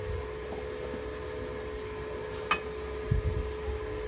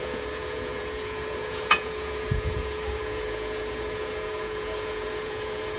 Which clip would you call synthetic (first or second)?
second